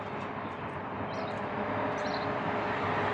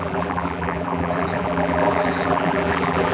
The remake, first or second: second